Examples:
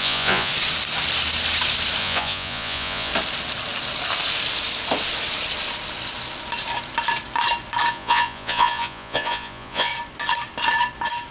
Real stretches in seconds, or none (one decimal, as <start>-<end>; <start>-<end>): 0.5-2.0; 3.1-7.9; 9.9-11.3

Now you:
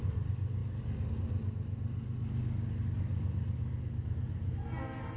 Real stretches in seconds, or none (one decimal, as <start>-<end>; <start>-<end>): 0.0-5.2

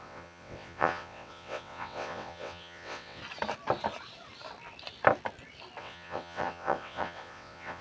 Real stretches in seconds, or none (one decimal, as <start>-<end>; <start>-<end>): 3.2-5.8